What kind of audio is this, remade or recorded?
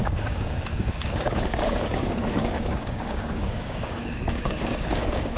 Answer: remade